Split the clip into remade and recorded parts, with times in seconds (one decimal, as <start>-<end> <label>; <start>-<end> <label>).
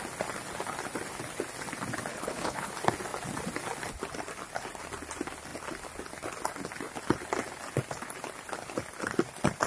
0.0-2.1 recorded; 2.1-2.7 remade; 2.7-9.7 recorded